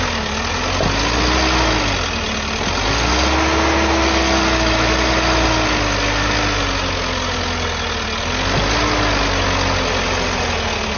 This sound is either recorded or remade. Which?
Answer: recorded